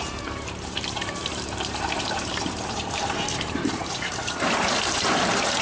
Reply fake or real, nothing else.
fake